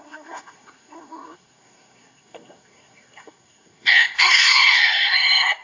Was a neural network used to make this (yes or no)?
yes